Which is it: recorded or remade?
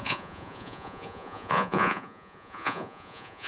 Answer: remade